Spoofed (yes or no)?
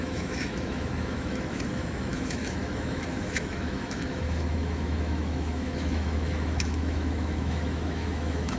yes